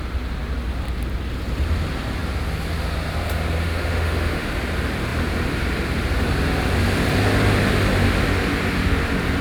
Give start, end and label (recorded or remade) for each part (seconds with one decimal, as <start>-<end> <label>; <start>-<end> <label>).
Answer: 0.0-3.6 recorded; 3.6-4.5 remade; 4.5-9.4 recorded

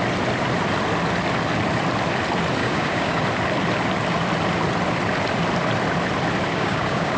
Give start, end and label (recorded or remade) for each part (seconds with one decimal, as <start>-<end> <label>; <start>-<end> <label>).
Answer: 0.0-2.6 recorded; 2.6-3.2 remade; 3.2-6.5 recorded; 6.5-7.2 remade

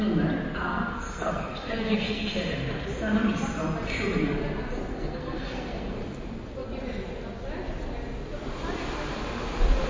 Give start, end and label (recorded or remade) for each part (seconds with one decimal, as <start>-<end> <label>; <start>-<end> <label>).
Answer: 0.0-0.7 recorded; 0.7-2.3 remade; 2.3-4.9 recorded; 4.9-6.0 remade; 6.0-9.9 recorded

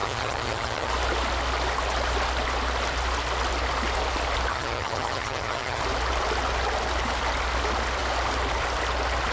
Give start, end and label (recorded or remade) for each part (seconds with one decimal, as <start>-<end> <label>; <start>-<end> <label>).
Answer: 0.0-0.9 remade; 0.9-4.5 recorded; 4.5-5.8 remade; 5.8-9.3 recorded

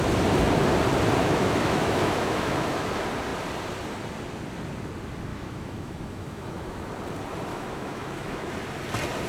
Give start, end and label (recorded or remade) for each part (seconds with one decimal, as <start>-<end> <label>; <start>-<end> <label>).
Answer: 0.0-1.2 recorded; 1.2-2.9 remade; 2.9-5.3 recorded; 5.3-6.9 remade; 6.9-7.5 recorded; 7.5-8.5 remade; 8.5-9.3 recorded

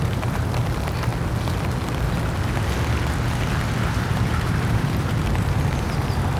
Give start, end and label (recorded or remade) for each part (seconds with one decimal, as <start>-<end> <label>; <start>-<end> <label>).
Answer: 0.0-1.1 remade; 1.1-3.8 recorded; 3.8-6.4 remade

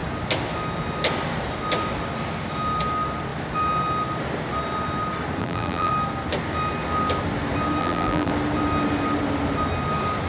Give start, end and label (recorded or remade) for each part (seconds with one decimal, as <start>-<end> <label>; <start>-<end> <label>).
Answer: 0.0-5.4 recorded; 5.4-5.9 remade; 5.9-7.8 recorded; 7.8-8.3 remade; 8.3-10.3 recorded

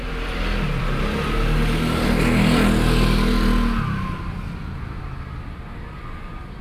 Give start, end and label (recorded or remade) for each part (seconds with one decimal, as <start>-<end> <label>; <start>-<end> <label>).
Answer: 0.0-6.6 recorded